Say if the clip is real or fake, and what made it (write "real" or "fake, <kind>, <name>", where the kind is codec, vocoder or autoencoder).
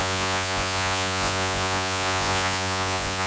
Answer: fake, vocoder, Vocos